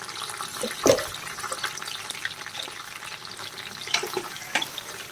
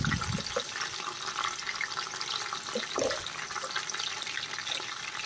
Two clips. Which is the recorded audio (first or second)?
second